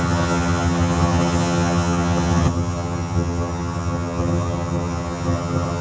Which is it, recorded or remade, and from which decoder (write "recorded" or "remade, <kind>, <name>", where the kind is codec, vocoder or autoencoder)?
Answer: remade, vocoder, HiFi-GAN